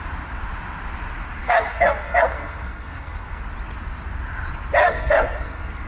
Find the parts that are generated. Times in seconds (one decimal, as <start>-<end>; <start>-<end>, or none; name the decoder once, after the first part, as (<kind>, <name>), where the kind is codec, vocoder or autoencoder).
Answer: 1.4-3.4 (codec, SNAC); 4.8-5.9

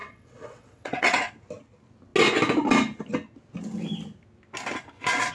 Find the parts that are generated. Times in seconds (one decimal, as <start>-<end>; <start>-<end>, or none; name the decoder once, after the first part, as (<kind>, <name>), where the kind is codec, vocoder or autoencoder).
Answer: 0.0-1.3 (vocoder, WaveNeXt)

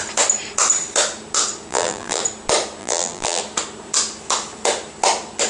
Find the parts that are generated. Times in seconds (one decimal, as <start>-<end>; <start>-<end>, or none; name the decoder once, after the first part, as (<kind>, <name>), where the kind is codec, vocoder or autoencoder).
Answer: 1.7-2.2 (vocoder, BigVGAN v2); 2.8-3.4

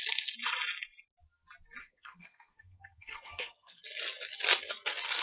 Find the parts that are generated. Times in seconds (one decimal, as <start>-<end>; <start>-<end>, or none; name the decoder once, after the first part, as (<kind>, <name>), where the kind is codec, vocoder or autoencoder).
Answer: 1.8-3.8 (codec, SNAC)

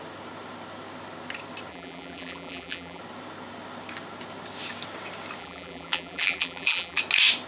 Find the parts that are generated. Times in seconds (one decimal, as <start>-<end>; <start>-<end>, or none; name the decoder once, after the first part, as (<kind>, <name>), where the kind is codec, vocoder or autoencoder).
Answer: 1.7-3.0 (vocoder, BigVGAN v2); 5.4-7.0